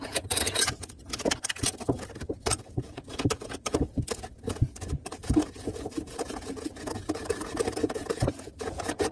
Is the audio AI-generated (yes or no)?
yes